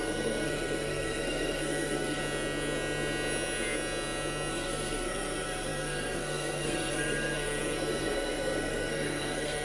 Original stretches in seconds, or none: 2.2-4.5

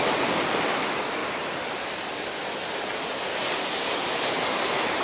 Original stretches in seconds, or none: 0.0-5.0

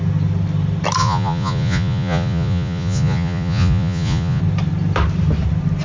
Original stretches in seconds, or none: 0.0-1.0; 4.4-5.8

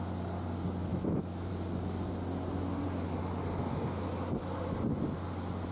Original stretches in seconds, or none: 0.0-0.9; 1.5-5.7

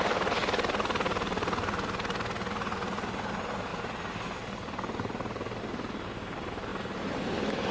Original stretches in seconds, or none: 0.0-7.7

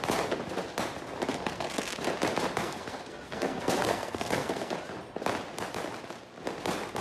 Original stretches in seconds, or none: 0.0-1.3; 1.9-2.6; 4.7-7.0

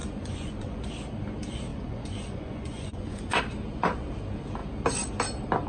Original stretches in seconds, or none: 0.8-1.7; 3.4-5.7